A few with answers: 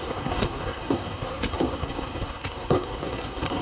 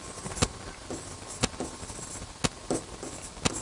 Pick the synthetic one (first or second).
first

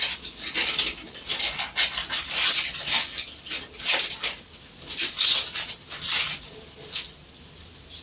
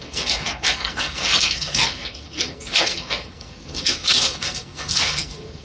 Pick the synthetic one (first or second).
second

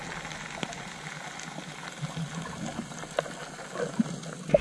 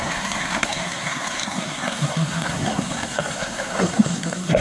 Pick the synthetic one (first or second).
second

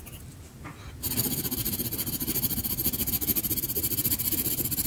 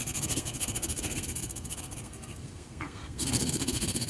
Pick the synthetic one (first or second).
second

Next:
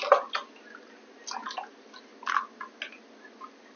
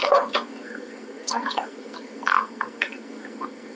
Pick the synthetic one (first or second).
second